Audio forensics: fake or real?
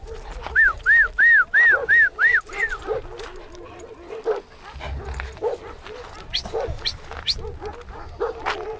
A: real